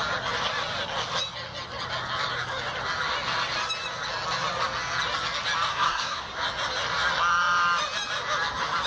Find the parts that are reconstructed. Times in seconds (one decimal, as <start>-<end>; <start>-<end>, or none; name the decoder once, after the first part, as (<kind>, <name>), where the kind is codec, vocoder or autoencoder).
5.7-6.2 (codec, SNAC)